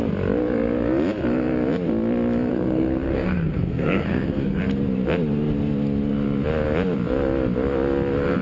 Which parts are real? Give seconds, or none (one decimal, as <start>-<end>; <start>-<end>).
0.0-2.5; 4.6-8.4